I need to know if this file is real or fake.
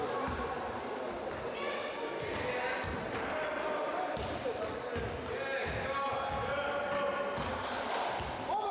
real